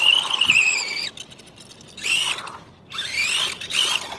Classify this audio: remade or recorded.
recorded